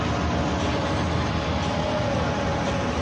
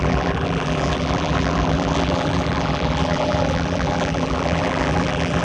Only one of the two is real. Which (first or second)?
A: first